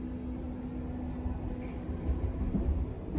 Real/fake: real